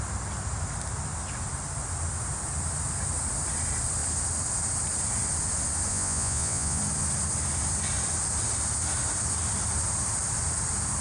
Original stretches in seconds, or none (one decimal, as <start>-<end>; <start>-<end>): 0.0-5.9; 6.8-11.0